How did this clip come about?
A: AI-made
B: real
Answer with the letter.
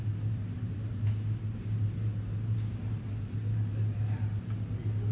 B